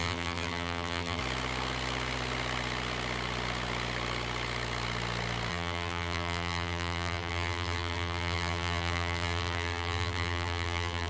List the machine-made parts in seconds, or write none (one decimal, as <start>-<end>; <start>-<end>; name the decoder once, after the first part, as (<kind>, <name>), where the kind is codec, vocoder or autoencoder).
0.0-1.2 (vocoder, BigVGAN v2); 5.5-11.1

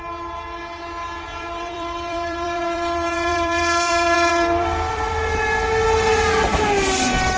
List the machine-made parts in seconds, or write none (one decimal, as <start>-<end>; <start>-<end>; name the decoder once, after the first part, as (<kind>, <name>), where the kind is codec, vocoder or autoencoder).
1.3-5.1 (vocoder, BigVGAN v2)

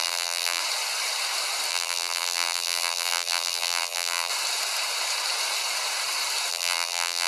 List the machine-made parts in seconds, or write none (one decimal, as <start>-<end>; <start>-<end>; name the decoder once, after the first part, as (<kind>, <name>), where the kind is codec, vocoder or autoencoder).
0.0-0.6 (vocoder, BigVGAN v2); 1.7-4.3; 6.5-7.3

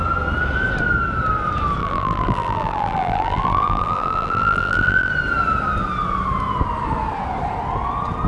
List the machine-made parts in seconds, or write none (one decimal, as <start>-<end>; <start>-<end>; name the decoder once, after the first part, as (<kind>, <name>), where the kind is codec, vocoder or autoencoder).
1.8-5.1 (vocoder, BigVGAN v2)

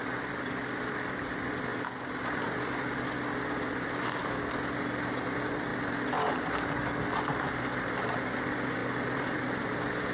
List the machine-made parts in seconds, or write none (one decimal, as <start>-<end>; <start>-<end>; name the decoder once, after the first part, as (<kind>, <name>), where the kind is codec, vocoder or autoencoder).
5.7-6.3 (vocoder, BigVGAN v2); 8.8-9.4

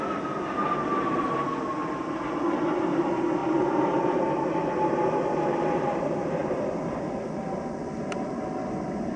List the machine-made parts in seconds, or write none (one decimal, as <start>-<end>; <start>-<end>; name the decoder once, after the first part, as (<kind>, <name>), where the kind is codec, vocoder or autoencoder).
none

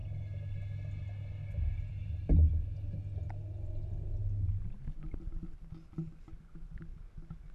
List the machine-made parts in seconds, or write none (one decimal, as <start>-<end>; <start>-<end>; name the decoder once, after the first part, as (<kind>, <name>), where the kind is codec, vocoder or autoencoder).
none